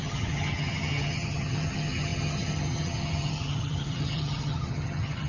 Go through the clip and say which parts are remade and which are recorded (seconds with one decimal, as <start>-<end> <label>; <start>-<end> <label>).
0.0-5.3 remade